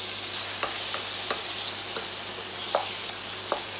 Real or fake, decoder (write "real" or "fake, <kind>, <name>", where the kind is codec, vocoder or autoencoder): real